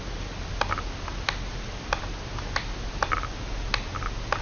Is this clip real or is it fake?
real